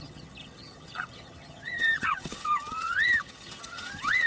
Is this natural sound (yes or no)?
no